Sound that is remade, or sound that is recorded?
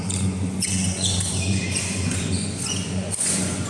remade